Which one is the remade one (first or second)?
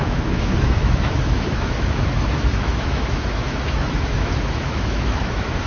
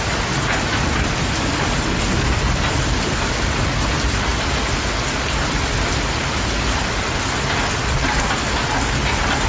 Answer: first